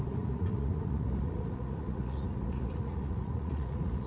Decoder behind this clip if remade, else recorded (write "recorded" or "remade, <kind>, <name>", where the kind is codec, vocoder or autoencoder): remade, vocoder, Vocos